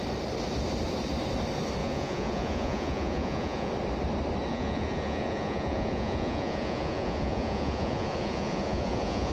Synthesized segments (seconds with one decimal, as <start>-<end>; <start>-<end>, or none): 1.8-3.7; 4.5-9.3